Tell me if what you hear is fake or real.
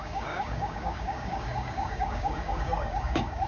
fake